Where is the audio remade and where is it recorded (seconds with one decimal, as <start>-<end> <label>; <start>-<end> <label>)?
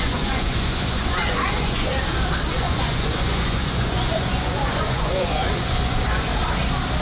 0.0-1.9 remade; 1.9-2.5 recorded; 2.5-6.3 remade; 6.3-7.0 recorded